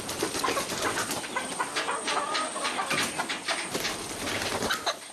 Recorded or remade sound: recorded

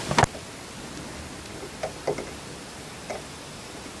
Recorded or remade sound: recorded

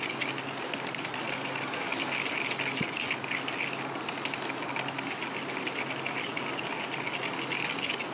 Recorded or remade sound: recorded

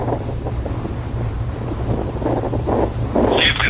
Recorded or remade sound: recorded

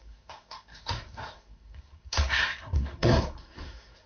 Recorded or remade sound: remade